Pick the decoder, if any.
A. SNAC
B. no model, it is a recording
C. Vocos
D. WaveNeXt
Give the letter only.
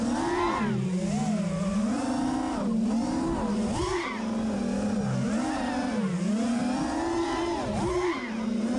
B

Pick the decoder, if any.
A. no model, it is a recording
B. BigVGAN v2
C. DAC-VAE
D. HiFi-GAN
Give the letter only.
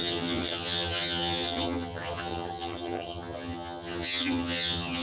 D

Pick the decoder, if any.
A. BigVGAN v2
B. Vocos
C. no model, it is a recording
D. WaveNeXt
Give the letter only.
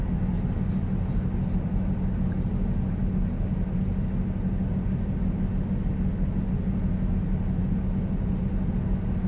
C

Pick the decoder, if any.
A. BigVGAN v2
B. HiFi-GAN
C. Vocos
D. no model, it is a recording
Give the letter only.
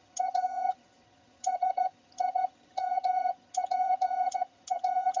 B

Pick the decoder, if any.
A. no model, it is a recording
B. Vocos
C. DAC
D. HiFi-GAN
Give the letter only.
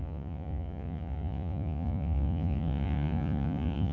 B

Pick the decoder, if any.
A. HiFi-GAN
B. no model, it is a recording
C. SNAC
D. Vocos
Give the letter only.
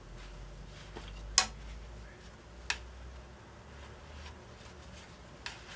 B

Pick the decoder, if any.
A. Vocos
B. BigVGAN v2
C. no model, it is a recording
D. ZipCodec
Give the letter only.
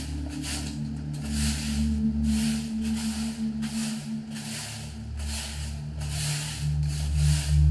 C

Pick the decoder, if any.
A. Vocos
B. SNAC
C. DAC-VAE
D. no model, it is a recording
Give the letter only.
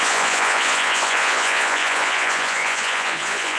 A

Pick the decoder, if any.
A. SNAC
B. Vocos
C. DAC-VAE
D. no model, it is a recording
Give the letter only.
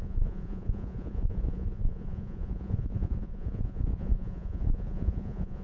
B